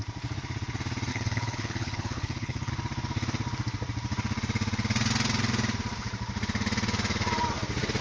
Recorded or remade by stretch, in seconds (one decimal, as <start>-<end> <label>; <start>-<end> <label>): 0.0-1.1 recorded; 1.1-2.7 remade; 2.7-8.0 recorded